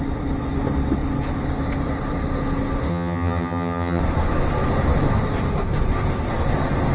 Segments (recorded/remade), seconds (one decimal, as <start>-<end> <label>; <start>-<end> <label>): 0.0-2.9 recorded; 2.9-4.0 remade; 4.0-6.9 recorded